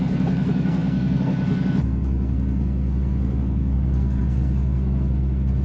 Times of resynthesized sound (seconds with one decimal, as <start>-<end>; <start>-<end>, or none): 0.0-5.6